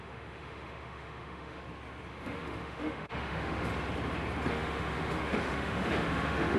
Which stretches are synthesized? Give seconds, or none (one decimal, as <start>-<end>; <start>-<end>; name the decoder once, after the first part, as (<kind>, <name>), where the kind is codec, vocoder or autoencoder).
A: 0.0-1.6 (autoencoder, DAC-VAE); 2.1-3.7; 4.5-6.6